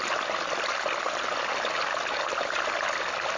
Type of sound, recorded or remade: recorded